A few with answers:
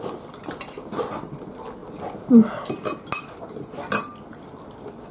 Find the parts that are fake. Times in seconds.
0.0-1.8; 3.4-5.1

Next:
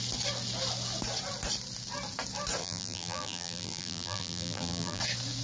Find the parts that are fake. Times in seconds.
2.6-5.0